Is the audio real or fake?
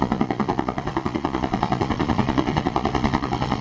fake